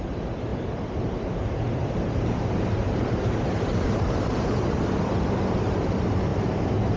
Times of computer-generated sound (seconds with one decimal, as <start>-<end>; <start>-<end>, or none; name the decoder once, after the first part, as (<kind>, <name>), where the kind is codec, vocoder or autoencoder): 0.5-4.7 (vocoder, BigVGAN v2); 6.3-7.0